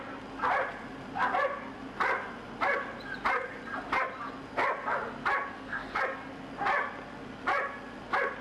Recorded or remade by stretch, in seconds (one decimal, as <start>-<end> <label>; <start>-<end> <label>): 0.0-5.5 recorded; 5.5-6.0 remade; 6.0-8.4 recorded